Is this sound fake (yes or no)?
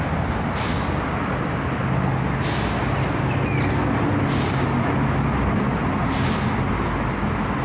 no